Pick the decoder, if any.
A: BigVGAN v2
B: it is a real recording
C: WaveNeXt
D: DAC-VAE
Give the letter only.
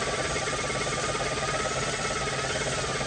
B